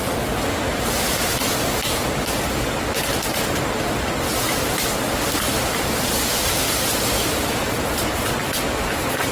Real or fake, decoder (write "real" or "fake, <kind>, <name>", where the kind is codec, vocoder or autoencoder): real